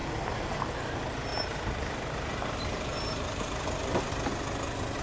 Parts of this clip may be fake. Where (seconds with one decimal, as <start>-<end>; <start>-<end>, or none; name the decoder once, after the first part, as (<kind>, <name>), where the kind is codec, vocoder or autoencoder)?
1.3-4.1 (vocoder, BigVGAN v2)